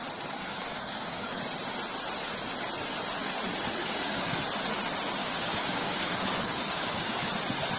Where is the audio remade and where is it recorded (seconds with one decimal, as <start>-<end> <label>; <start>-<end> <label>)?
0.0-0.4 recorded; 0.4-1.4 remade; 1.4-3.8 recorded; 3.8-4.4 remade; 4.4-5.2 recorded; 5.2-7.3 remade; 7.3-7.8 recorded